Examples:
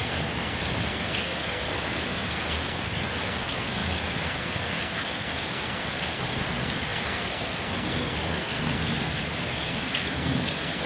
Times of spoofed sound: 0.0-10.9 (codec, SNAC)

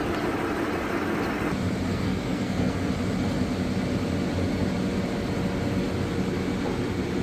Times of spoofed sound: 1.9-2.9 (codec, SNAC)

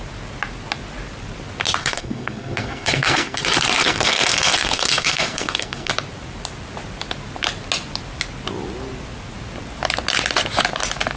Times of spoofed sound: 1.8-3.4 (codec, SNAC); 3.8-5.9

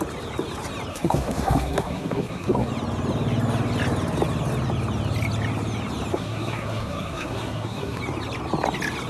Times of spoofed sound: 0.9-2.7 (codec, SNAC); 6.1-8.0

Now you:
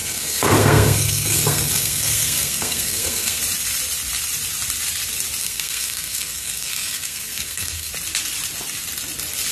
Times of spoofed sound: 0.0-3.4 (codec, SNAC); 5.4-7.9